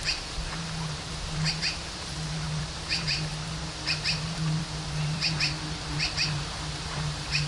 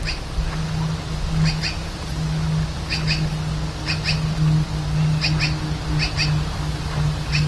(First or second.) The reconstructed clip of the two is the first